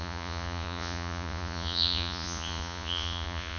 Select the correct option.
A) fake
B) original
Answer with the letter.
A